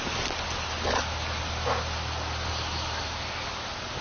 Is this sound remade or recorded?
recorded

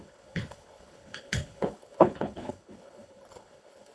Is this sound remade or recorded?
remade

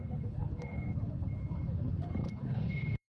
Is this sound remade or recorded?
remade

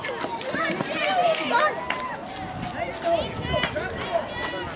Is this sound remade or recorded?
recorded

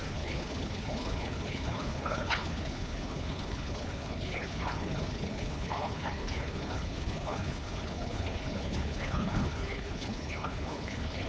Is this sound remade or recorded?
remade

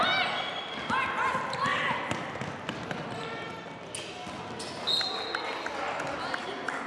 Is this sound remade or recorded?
recorded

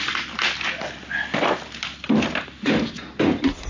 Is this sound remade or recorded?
recorded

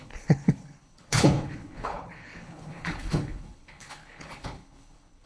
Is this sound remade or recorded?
remade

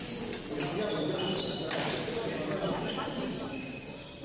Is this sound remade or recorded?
recorded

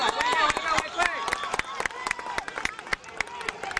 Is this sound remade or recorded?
recorded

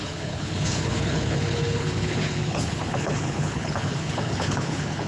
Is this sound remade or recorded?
remade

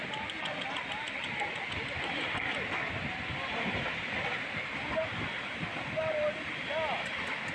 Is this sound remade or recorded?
recorded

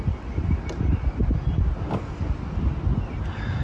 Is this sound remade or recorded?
recorded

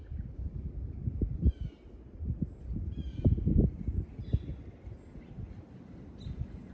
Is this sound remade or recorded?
recorded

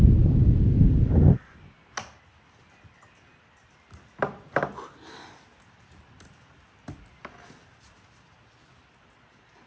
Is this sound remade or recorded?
recorded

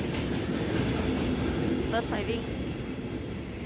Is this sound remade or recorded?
recorded